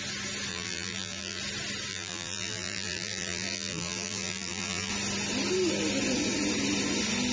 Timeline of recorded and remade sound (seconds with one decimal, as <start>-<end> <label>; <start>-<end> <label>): 0.0-0.5 recorded; 0.5-1.4 remade; 1.4-1.9 recorded; 1.9-4.9 remade; 4.9-7.3 recorded

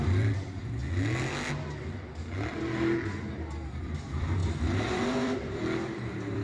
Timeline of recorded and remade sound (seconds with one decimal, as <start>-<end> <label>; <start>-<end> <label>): 0.0-0.8 remade; 0.8-3.8 recorded; 3.8-4.4 remade; 4.4-4.9 recorded; 4.9-6.4 remade

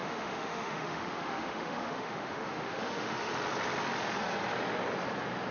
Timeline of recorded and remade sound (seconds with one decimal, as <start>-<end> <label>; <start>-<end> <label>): 0.0-3.3 remade; 3.3-5.5 recorded

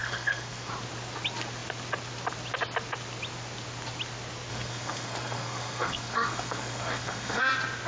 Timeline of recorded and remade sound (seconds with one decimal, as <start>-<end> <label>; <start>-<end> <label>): 0.0-0.7 remade; 0.7-4.5 recorded; 4.5-7.4 remade; 7.4-7.9 recorded

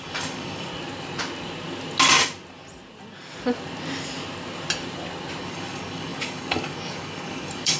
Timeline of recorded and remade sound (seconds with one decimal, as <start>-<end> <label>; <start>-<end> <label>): 0.0-0.7 remade; 0.7-5.4 recorded; 5.4-7.8 remade

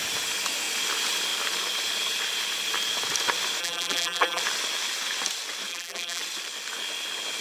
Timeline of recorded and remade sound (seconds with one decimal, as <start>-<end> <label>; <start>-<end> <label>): 0.0-3.6 recorded; 3.6-4.4 remade; 4.4-5.7 recorded; 5.7-6.2 remade; 6.2-7.4 recorded

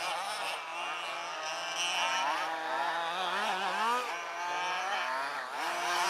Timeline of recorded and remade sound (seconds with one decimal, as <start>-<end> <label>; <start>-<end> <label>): 0.0-6.1 recorded

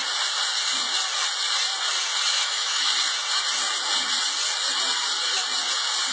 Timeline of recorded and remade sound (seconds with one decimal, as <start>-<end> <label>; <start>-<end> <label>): 0.0-2.3 recorded; 2.3-2.9 remade; 2.9-6.1 recorded